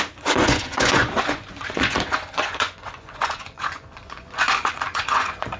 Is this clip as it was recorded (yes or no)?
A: no